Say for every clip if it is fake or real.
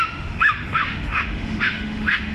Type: fake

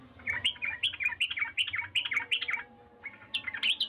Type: real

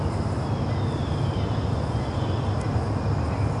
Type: real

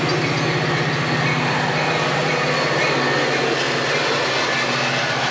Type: real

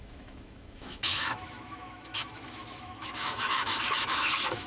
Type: fake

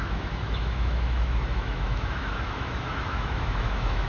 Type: fake